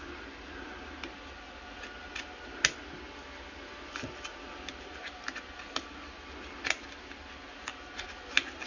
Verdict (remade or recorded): recorded